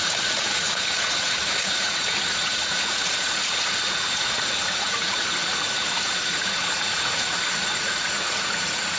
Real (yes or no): no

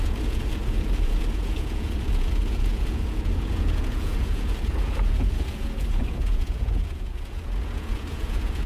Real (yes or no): no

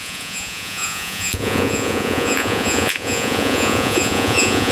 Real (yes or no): no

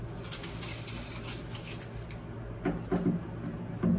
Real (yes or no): yes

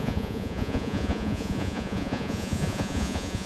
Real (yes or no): no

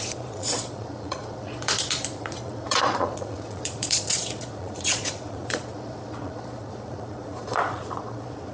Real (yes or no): no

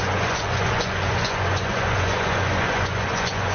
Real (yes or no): no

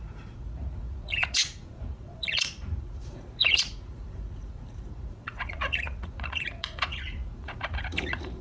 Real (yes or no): no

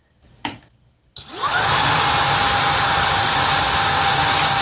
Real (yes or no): yes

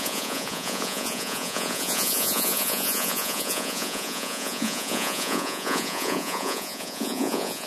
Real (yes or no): no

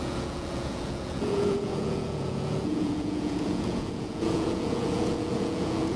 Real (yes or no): no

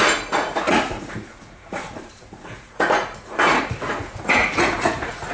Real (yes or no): no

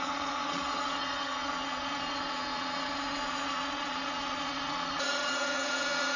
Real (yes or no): no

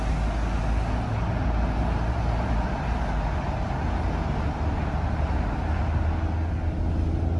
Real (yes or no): yes